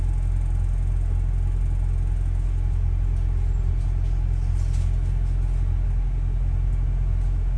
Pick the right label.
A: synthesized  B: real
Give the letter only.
B